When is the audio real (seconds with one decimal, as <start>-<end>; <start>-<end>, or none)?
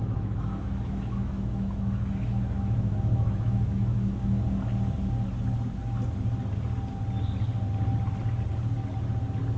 4.4-9.6